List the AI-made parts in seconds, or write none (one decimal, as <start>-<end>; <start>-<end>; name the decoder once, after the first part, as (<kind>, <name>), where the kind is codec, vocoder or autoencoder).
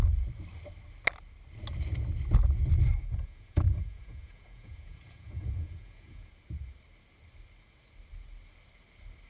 2.8-6.3 (vocoder, Vocos)